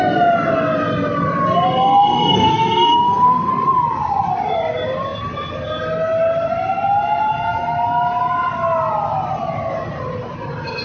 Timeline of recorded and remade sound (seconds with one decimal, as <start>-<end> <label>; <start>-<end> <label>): 0.0-2.3 recorded; 2.3-3.5 remade; 3.5-10.8 recorded